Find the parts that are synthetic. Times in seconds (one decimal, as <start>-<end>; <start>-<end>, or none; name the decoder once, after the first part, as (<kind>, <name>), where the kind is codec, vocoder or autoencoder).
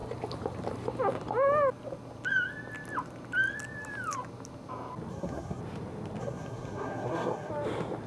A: 5.1-5.6 (codec, SNAC); 6.2-7.5